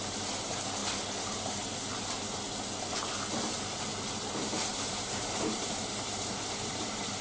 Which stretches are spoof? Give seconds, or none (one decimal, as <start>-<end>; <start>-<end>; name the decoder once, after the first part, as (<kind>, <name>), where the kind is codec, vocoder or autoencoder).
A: 4.7-7.2 (vocoder, BigVGAN v2)